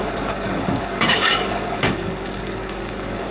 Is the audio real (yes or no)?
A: no